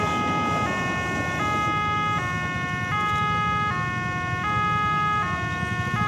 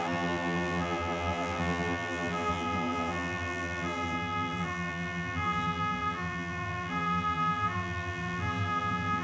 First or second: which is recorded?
first